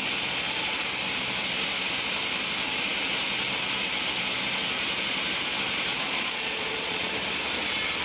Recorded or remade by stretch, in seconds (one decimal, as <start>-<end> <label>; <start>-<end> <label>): 0.0-5.9 recorded; 5.9-7.1 remade; 7.1-8.0 recorded